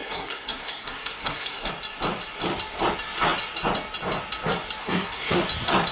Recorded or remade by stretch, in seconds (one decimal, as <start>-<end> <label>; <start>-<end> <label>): 0.0-1.7 remade; 1.7-4.8 recorded; 4.8-5.4 remade; 5.4-5.9 recorded